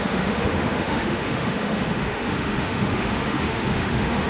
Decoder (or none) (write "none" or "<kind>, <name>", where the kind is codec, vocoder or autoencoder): autoencoder, DAC-VAE